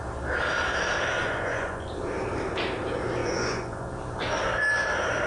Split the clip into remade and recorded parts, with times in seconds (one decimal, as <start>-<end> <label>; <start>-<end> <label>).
0.0-1.2 recorded; 1.2-1.9 remade; 1.9-3.2 recorded; 3.2-3.9 remade; 3.9-5.3 recorded